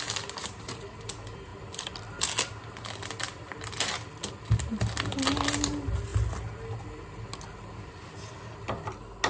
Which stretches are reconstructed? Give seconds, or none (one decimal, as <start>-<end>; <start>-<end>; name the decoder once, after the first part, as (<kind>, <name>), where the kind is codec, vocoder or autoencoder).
none